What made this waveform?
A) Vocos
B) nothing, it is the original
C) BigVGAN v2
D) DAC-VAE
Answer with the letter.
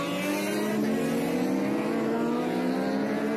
B